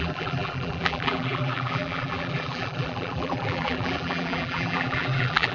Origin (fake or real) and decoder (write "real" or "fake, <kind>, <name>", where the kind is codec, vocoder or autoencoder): fake, vocoder, BigVGAN v2